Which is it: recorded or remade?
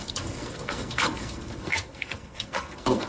remade